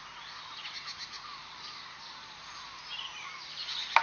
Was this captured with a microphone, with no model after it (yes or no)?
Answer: yes